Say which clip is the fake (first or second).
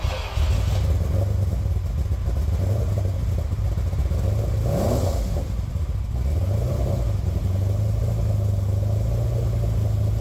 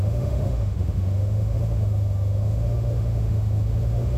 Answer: second